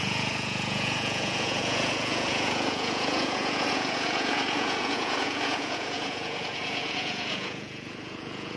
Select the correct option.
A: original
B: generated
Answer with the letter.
B